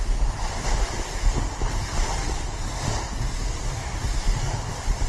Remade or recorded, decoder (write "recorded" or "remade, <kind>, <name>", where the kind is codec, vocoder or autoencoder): recorded